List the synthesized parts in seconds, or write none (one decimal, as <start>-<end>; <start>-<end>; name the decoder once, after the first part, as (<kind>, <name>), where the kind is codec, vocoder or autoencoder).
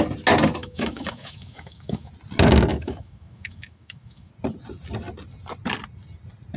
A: 0.6-2.1 (autoencoder, DAC-VAE); 2.7-4.3